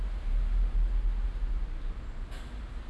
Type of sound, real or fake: real